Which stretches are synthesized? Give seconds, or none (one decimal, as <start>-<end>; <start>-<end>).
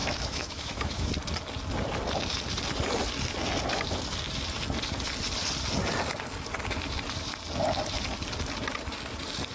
0.0-1.1